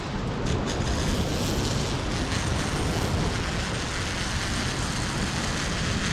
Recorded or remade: recorded